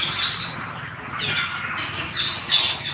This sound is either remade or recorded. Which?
recorded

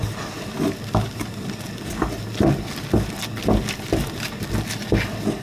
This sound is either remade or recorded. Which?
recorded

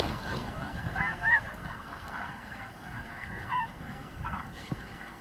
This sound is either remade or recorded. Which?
remade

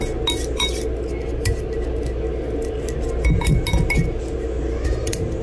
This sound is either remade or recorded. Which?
recorded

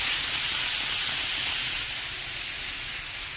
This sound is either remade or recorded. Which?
recorded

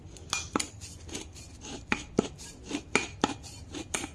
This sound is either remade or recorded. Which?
recorded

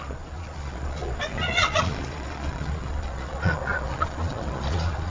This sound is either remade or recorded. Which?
remade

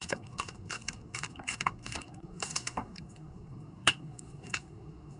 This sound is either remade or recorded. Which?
remade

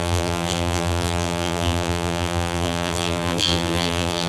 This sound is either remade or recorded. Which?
remade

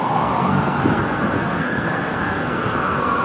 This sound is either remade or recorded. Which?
remade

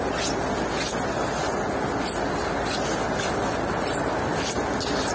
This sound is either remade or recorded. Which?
recorded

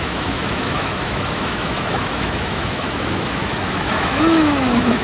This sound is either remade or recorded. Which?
remade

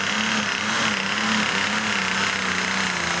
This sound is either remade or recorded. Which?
recorded